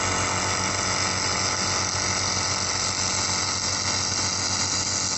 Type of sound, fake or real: real